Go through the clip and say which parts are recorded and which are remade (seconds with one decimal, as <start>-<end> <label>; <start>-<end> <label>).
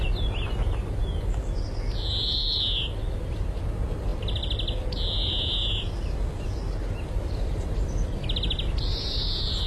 0.0-9.7 recorded